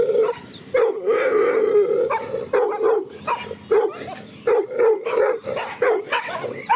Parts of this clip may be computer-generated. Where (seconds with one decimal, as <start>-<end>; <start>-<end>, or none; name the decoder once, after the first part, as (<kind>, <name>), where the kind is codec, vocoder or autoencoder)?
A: 6.1-6.8 (vocoder, WaveNeXt)